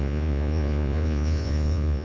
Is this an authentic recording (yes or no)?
no